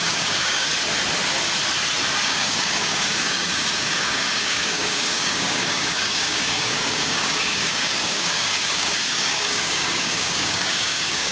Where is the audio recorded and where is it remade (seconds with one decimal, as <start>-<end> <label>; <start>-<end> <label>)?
0.0-0.7 remade; 0.7-2.2 recorded; 2.2-11.3 remade

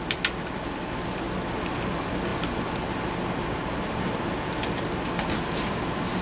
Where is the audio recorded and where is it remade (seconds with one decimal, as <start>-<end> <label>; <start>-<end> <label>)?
0.0-6.2 recorded

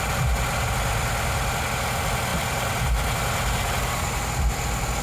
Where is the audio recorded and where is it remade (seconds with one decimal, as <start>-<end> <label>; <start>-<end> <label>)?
0.0-5.0 recorded

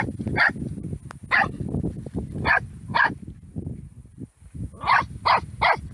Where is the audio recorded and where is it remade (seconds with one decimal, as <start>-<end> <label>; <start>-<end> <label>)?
0.0-5.9 recorded